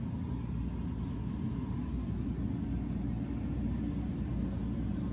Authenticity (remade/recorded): recorded